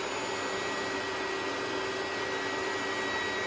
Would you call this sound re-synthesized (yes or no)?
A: no